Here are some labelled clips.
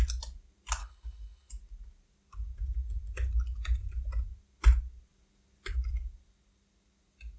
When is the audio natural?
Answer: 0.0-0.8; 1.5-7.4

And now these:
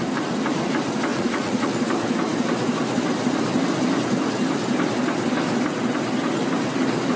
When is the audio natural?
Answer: 0.0-1.1; 1.7-7.2

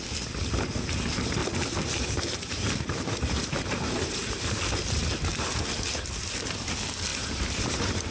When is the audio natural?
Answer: 0.0-1.4; 4.6-7.1

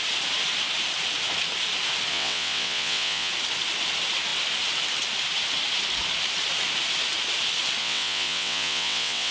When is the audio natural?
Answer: 0.0-2.1; 3.3-7.8

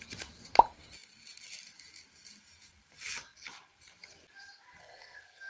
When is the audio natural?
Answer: 0.0-4.8

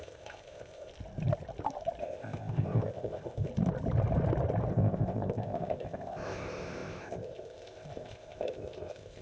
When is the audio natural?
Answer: 0.9-2.0; 3.5-4.7